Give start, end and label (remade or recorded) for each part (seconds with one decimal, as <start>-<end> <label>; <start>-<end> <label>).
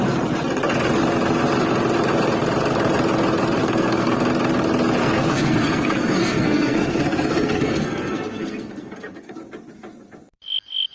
0.0-3.6 recorded; 3.6-4.2 remade; 4.2-5.0 recorded; 5.0-9.3 remade; 9.3-10.9 recorded